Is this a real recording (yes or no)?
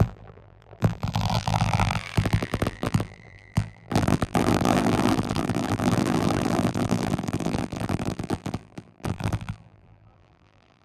no